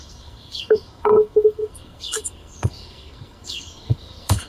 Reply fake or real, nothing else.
fake